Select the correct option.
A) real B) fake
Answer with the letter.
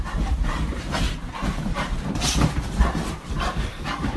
B